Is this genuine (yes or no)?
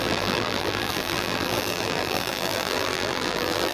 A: no